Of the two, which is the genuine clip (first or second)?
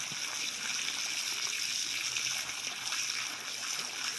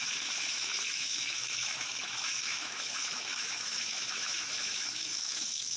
first